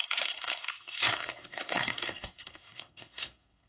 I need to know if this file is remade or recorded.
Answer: remade